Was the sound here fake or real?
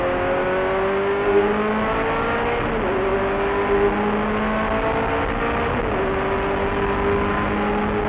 real